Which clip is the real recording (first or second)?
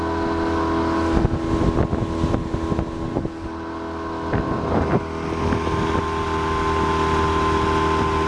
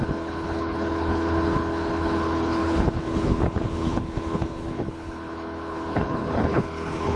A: first